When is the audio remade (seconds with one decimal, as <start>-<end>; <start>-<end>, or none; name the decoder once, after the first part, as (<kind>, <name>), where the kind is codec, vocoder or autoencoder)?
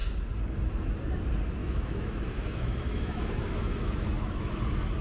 1.6-4.6 (autoencoder, DAC-VAE)